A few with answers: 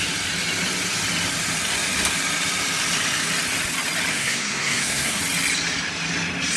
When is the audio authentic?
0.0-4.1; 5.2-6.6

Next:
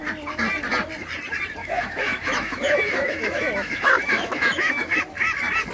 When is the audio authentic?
0.0-1.6; 5.0-5.7

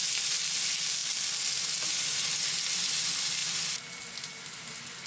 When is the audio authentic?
0.0-5.1

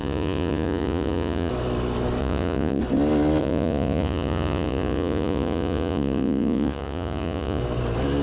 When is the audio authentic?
1.5-2.2; 2.8-3.4; 7.6-8.2

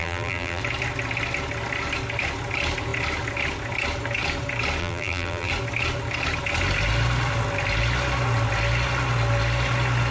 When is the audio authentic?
0.6-4.8; 5.5-10.1

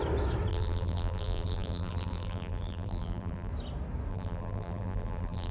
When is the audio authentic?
0.0-0.5; 3.5-4.1

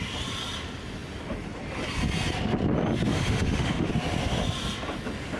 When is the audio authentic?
0.0-3.1; 3.9-5.4

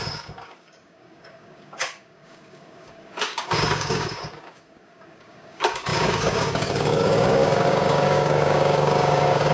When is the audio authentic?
none